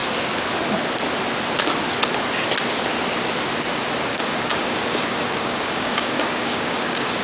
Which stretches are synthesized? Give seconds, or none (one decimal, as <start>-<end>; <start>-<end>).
4.1-7.2